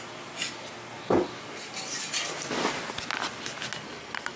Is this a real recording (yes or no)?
yes